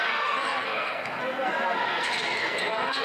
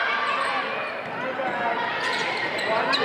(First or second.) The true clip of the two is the second